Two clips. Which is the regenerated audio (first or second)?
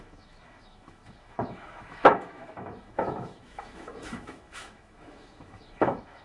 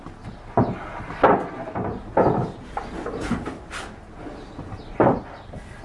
first